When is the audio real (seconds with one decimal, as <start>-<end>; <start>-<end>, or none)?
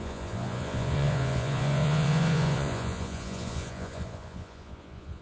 none